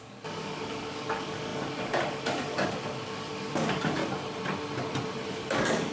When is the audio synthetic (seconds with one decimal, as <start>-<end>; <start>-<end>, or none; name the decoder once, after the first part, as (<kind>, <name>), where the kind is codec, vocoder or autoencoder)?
0.0-4.0 (codec, DAC); 5.3-5.9